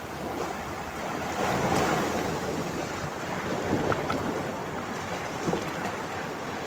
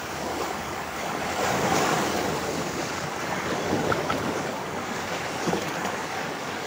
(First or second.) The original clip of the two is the first